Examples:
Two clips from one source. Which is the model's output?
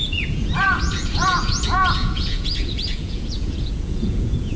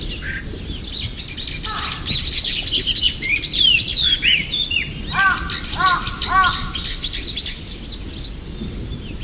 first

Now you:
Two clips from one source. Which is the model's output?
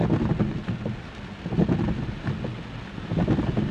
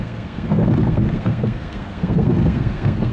second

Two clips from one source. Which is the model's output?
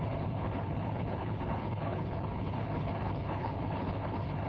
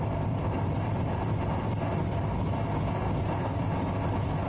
first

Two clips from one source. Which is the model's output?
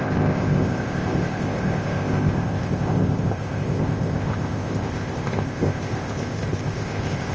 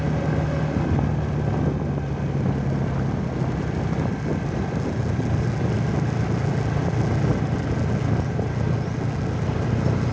first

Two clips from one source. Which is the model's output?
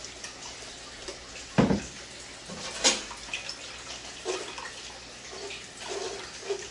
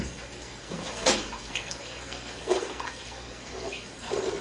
second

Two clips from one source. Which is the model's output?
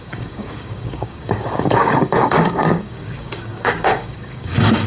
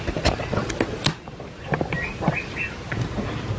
first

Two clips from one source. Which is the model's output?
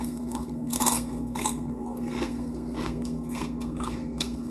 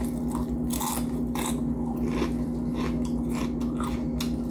first